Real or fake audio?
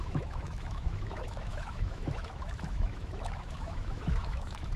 fake